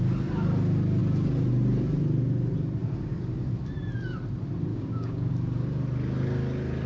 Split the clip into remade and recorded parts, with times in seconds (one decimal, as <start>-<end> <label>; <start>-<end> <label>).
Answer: 0.0-4.7 recorded; 4.7-5.3 remade; 5.3-6.9 recorded